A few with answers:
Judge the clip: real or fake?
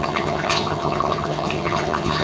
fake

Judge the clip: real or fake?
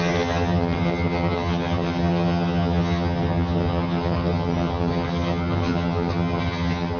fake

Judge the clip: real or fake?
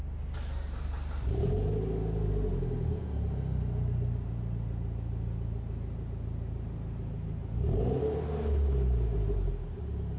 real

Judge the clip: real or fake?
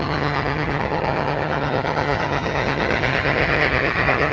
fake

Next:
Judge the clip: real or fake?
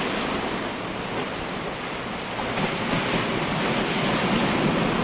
real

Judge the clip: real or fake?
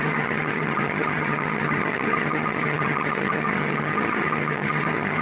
fake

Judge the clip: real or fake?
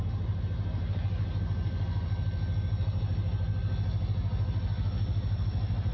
real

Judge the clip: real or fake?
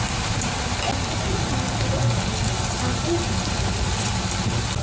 real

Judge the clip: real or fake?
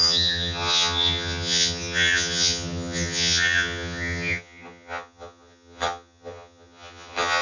fake